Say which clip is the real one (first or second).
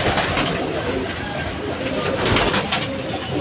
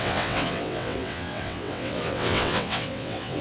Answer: first